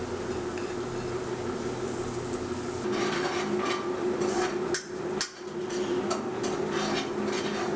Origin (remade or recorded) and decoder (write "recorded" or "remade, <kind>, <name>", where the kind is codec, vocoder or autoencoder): recorded